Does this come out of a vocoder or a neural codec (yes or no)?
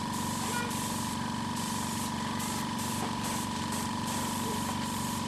yes